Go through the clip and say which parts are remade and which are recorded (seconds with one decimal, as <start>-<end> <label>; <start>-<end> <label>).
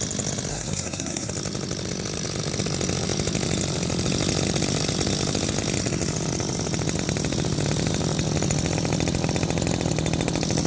0.0-0.5 recorded; 0.5-1.3 remade; 1.3-10.7 recorded